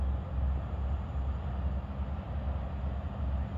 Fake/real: real